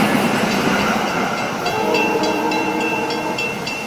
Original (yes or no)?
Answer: no